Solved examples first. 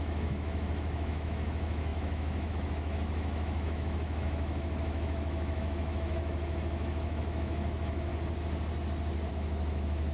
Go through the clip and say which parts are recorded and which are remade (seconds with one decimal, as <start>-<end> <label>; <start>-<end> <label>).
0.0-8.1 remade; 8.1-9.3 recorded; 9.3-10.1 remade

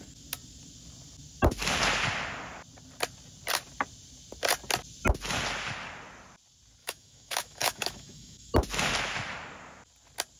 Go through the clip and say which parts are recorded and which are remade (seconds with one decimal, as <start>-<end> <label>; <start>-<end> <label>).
0.0-6.8 recorded; 6.8-8.5 remade; 8.5-10.4 recorded

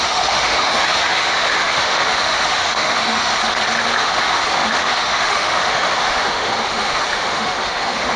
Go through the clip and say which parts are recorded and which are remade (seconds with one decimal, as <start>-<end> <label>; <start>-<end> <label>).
0.0-3.3 remade; 3.3-4.0 recorded; 4.0-8.2 remade

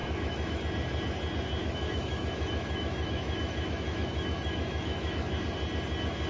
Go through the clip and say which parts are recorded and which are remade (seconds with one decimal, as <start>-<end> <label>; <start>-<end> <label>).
0.0-0.6 remade; 0.6-1.6 recorded; 1.6-5.3 remade; 5.3-6.3 recorded

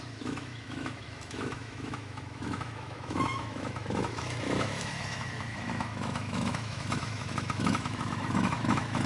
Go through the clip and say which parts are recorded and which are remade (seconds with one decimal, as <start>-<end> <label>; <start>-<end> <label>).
0.0-9.1 remade

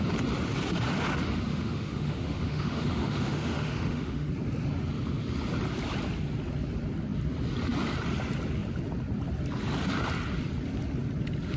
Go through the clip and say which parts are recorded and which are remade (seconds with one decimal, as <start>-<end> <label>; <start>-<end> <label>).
0.0-1.5 recorded; 1.5-4.3 remade; 4.3-11.6 recorded

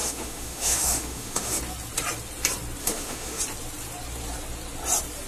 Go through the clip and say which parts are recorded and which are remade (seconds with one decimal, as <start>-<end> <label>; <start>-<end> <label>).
0.0-1.6 remade; 1.6-2.8 recorded; 2.8-3.4 remade; 3.4-5.3 recorded